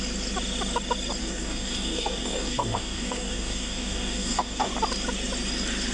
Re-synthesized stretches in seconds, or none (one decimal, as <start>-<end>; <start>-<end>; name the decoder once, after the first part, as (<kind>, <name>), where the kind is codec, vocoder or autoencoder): 1.2-4.7 (codec, DAC)